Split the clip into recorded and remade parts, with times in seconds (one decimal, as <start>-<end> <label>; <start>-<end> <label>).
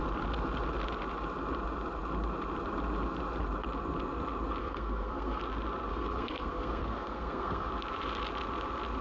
0.0-4.6 recorded; 4.6-5.4 remade; 5.4-5.9 recorded; 5.9-7.7 remade; 7.7-9.0 recorded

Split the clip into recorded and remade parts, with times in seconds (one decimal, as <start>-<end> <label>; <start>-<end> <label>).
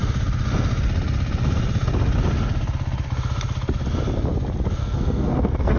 0.0-4.8 recorded; 4.8-5.8 remade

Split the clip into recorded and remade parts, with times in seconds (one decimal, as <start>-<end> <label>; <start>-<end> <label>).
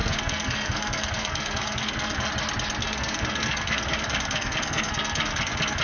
0.0-2.3 remade; 2.3-2.8 recorded; 2.8-5.8 remade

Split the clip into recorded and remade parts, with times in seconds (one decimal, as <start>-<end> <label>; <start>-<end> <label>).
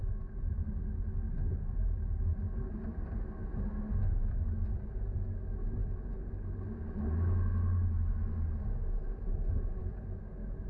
0.0-10.7 recorded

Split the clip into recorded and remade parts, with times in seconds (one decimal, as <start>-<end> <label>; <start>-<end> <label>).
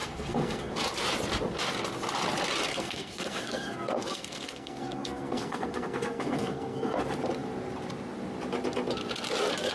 0.0-0.7 remade; 0.7-2.7 recorded; 2.7-7.0 remade; 7.0-9.7 recorded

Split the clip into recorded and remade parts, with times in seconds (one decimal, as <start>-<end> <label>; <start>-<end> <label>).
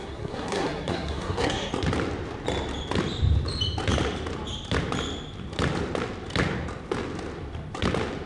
0.0-1.7 remade; 1.7-8.3 recorded